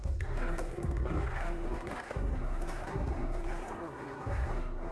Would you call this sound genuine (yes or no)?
no